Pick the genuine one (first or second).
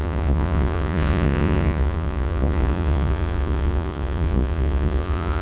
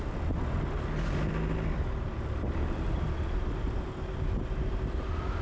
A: second